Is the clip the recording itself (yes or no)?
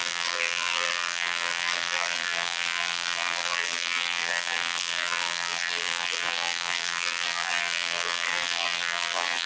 no